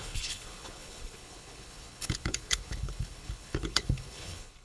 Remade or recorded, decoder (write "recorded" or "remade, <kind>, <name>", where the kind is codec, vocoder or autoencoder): remade, codec, HILCodec